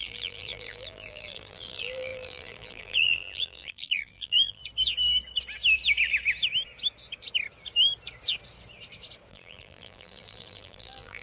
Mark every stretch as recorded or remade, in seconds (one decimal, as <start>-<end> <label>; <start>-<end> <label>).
0.0-4.6 remade; 4.6-9.3 recorded; 9.3-11.2 remade